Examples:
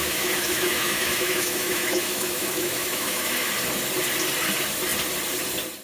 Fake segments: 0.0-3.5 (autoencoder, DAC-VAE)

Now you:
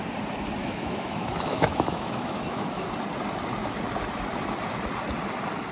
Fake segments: 0.6-2.9 (autoencoder, DAC-VAE)

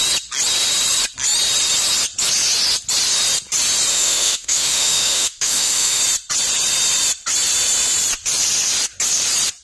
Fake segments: 3.9-6.0 (autoencoder, DAC-VAE)

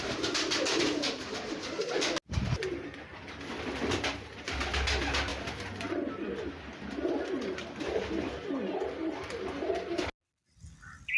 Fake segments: none